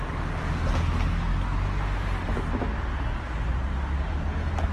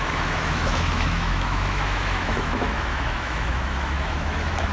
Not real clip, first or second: second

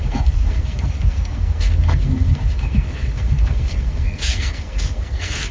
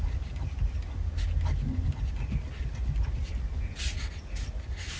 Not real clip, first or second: first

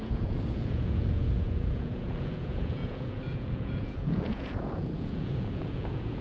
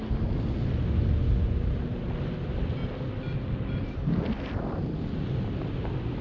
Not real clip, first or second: first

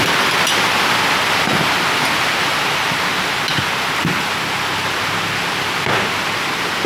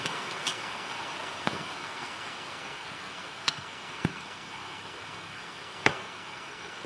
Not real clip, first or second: second